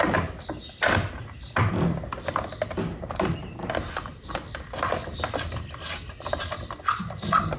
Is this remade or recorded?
recorded